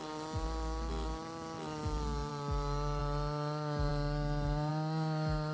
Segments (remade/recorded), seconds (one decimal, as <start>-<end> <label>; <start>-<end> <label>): 0.0-5.5 recorded